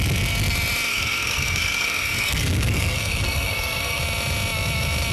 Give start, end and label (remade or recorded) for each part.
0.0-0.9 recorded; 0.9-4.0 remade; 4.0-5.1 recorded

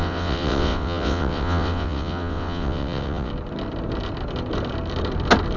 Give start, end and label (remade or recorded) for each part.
0.0-3.3 remade; 3.3-5.6 recorded

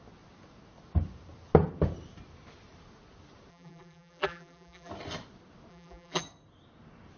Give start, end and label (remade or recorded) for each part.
0.0-3.5 recorded; 3.5-4.9 remade; 4.9-5.7 recorded; 5.7-6.2 remade; 6.2-7.2 recorded

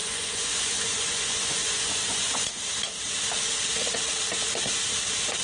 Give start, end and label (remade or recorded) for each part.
0.0-2.6 remade; 2.6-5.4 recorded

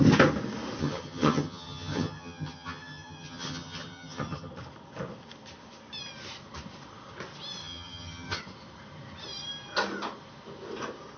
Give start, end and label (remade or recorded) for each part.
0.0-0.8 recorded; 0.8-4.5 remade; 4.5-7.6 recorded; 7.6-8.4 remade; 8.4-11.2 recorded

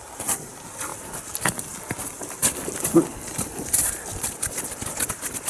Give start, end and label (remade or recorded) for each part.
0.0-5.5 recorded